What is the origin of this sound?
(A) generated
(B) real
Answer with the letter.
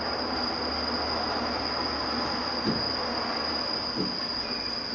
B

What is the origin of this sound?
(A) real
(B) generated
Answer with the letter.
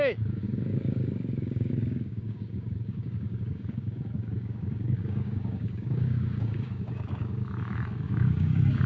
B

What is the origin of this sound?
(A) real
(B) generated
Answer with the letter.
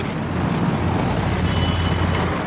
A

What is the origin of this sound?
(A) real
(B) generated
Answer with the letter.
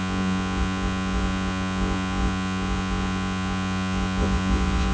B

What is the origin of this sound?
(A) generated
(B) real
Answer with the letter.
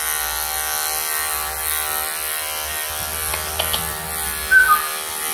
B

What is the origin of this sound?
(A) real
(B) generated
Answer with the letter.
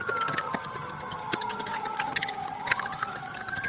B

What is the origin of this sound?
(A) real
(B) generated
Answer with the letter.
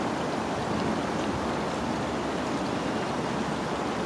A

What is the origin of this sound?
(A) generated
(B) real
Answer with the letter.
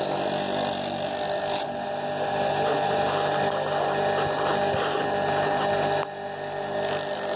B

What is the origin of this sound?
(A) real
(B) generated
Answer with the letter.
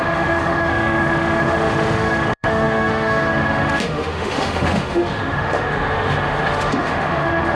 B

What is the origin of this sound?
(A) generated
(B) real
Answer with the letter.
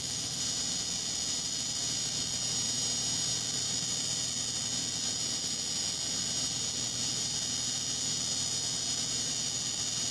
A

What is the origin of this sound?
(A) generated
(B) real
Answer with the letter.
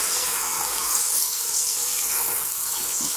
A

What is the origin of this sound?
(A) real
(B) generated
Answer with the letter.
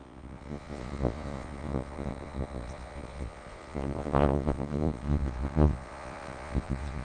B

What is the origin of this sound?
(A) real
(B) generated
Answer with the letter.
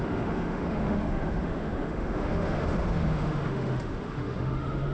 B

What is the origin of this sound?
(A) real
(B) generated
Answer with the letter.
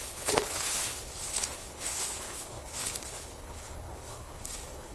B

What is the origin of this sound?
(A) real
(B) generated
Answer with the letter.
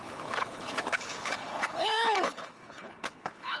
B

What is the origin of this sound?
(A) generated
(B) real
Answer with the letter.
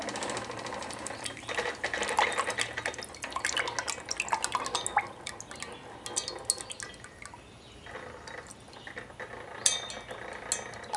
B